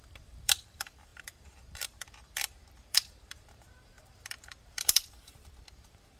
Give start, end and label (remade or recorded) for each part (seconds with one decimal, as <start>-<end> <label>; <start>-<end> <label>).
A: 0.0-6.2 remade